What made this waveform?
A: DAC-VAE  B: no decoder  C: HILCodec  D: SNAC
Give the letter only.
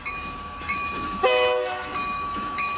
A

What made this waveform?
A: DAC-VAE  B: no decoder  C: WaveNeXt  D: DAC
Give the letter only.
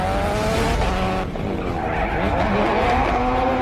B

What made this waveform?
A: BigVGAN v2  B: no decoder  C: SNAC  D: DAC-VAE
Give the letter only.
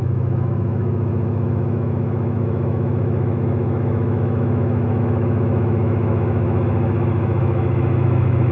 D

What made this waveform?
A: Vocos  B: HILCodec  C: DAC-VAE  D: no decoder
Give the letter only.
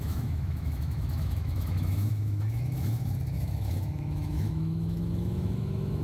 C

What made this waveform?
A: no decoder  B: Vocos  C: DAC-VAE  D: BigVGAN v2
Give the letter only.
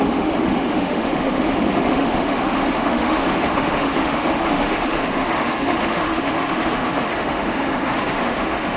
C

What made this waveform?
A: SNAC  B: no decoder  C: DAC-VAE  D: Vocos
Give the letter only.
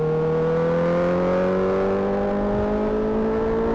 B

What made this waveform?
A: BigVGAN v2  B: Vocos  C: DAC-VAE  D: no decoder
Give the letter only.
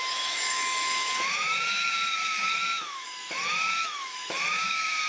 C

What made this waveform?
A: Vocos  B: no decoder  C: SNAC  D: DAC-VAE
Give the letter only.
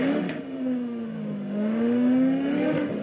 D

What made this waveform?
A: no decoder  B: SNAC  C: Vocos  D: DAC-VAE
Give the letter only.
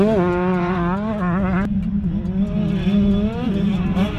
A